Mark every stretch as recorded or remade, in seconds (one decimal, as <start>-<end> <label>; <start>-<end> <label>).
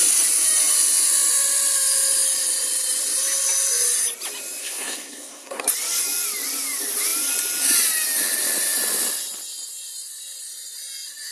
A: 0.0-4.6 recorded; 4.6-5.6 remade; 5.6-11.3 recorded